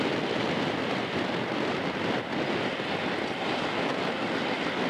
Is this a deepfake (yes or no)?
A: no